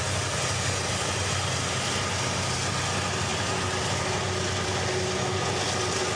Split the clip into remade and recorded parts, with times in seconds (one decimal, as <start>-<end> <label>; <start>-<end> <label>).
0.0-6.2 recorded